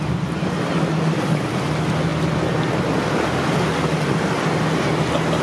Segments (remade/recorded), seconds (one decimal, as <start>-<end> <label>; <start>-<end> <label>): 0.0-5.4 recorded